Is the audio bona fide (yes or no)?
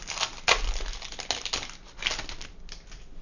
yes